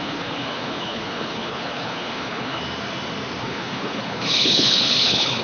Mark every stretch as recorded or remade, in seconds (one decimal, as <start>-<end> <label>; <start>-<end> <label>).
0.0-2.6 remade; 2.6-3.4 recorded; 3.4-5.4 remade